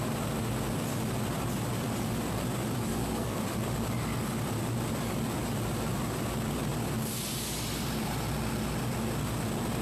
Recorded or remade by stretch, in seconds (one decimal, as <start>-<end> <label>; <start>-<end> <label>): 0.0-2.9 recorded; 2.9-3.4 remade; 3.4-9.8 recorded

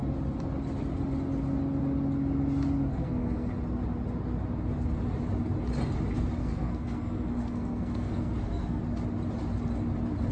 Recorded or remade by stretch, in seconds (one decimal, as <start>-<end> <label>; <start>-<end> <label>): 0.0-2.9 recorded; 2.9-3.5 remade; 3.5-6.4 recorded; 6.4-8.8 remade; 8.8-10.3 recorded

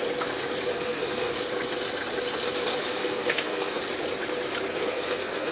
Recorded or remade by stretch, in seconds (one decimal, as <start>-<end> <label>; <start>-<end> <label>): 0.0-0.7 recorded; 0.7-1.3 remade; 1.3-3.0 recorded; 3.0-3.8 remade; 3.8-4.7 recorded; 4.7-5.5 remade

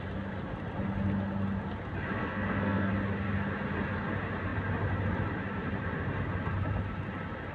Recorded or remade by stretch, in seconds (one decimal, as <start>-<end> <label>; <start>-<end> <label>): 0.0-2.2 recorded; 2.2-2.9 remade; 2.9-7.5 recorded

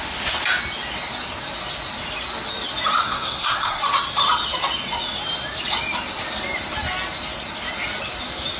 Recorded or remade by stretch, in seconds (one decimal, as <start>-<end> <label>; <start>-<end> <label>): 0.0-3.0 recorded; 3.0-3.8 remade; 3.8-8.6 recorded